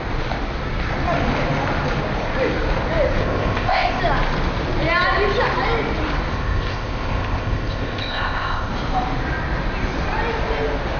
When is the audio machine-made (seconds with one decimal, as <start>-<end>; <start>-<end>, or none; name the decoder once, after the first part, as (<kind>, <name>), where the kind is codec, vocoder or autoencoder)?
3.2-4.0 (codec, ZipCodec); 6.3-8.7